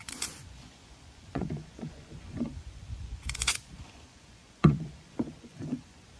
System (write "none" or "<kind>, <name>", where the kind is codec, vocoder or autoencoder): vocoder, Vocos